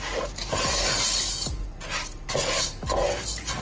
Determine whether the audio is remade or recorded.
recorded